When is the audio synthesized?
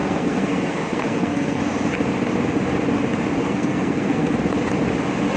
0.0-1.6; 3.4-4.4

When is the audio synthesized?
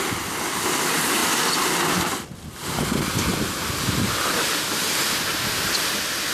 none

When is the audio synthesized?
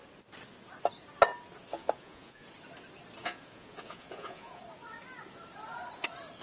1.7-2.5; 3.2-4.6